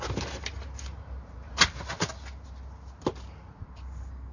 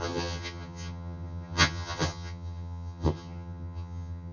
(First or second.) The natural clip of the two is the first